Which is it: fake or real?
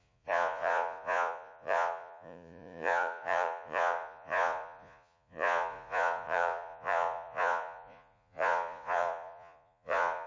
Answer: fake